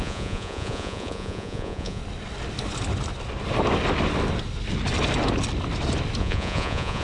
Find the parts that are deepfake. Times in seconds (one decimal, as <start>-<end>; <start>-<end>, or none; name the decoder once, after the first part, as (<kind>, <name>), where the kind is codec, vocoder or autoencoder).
0.0-2.0 (vocoder, Vocos); 6.2-7.0